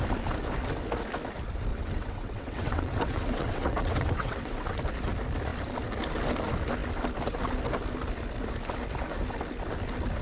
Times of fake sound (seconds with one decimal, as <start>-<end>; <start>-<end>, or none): 1.7-4.8